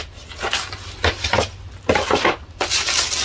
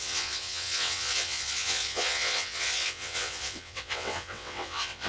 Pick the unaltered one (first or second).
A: first